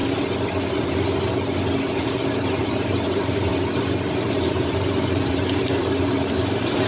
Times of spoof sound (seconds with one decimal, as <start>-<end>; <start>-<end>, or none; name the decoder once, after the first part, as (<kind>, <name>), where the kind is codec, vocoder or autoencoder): 1.8-3.5 (vocoder, BigVGAN v2); 4.3-6.9